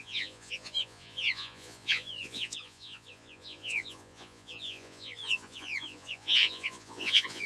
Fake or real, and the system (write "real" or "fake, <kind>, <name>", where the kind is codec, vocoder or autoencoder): fake, vocoder, Vocos